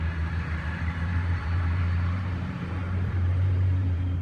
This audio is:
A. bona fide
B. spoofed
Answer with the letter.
B